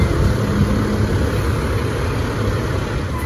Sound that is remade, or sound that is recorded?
recorded